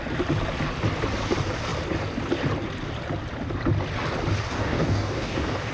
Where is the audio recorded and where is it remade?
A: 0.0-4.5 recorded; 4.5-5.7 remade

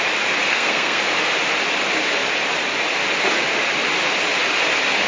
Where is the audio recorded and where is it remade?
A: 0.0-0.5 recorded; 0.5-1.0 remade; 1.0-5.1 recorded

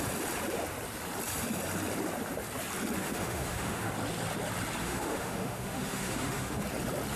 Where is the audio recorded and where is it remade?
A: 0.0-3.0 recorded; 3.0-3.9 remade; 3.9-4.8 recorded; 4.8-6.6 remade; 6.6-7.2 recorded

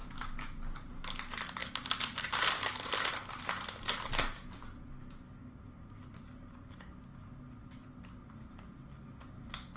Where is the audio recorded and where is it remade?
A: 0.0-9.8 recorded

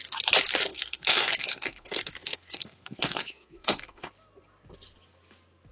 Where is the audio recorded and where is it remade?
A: 0.0-0.7 recorded; 0.7-4.1 remade; 4.1-5.7 recorded

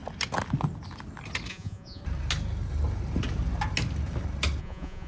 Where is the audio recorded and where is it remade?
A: 0.0-1.5 recorded; 1.5-2.0 remade; 2.0-4.6 recorded; 4.6-5.1 remade

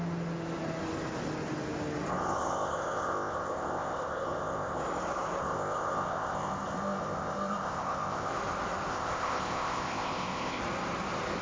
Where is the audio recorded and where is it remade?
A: 0.0-2.1 recorded; 2.1-4.8 remade; 4.8-5.4 recorded; 5.4-8.3 remade; 8.3-8.9 recorded; 8.9-10.6 remade; 10.6-11.4 recorded

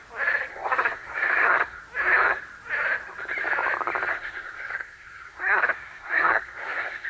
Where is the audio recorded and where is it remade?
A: 0.0-0.5 recorded; 0.5-1.8 remade; 1.8-4.1 recorded; 4.1-7.1 remade